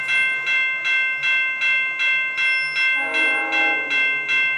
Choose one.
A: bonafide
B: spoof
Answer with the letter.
A